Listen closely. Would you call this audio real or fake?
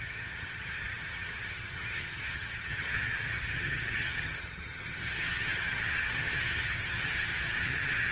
fake